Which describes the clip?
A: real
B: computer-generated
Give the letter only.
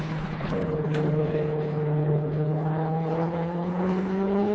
B